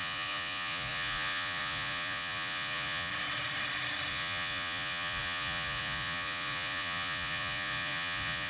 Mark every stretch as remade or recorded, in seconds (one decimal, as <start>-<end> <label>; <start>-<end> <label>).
0.0-3.1 remade; 3.1-4.1 recorded; 4.1-8.5 remade